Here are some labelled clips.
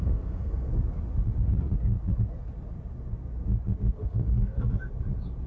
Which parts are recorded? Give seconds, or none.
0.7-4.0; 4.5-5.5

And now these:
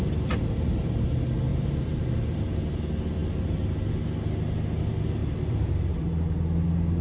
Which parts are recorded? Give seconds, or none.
0.0-1.5; 2.4-5.2; 5.7-7.0

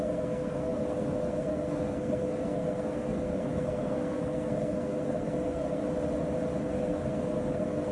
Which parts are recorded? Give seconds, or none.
5.8-6.6

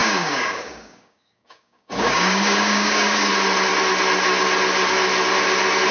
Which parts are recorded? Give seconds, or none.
3.3-5.9

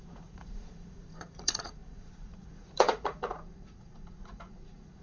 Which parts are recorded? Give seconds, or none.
none

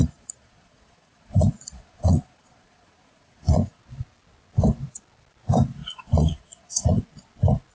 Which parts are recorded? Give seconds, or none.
3.8-5.8; 7.0-7.7